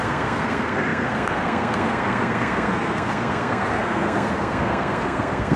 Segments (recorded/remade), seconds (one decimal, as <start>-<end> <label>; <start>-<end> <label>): 0.0-5.6 remade